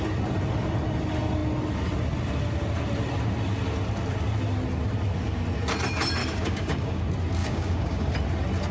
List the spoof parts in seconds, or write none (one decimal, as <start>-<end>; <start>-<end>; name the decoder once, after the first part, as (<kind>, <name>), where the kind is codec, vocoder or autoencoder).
6.2-7.0 (codec, DAC); 7.4-8.1